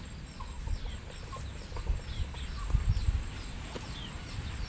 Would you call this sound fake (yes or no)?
no